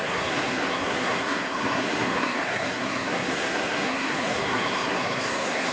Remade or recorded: remade